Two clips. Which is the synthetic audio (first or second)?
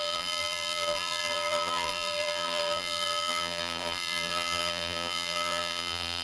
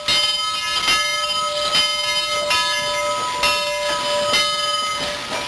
first